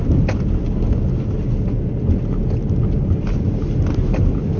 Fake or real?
real